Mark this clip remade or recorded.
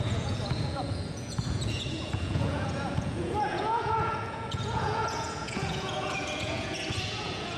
remade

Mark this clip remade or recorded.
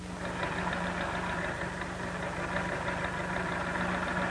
recorded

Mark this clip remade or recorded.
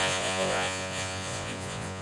remade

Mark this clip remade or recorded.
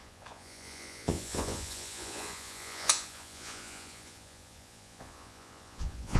remade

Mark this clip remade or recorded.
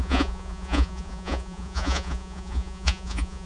remade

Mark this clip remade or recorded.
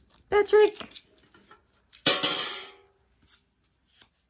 recorded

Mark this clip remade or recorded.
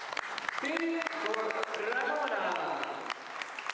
recorded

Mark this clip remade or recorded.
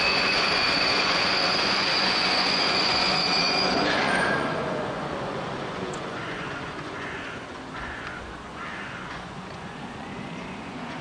remade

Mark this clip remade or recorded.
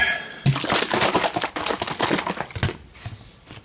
recorded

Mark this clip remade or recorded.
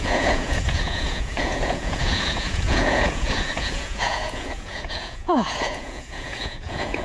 remade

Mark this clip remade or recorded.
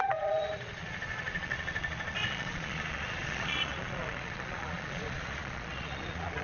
remade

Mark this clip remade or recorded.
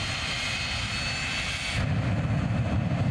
recorded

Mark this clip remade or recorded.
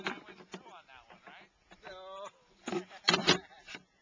recorded